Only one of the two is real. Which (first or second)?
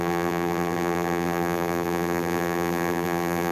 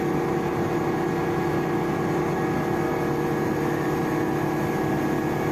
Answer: second